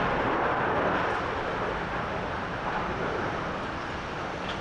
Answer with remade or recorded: recorded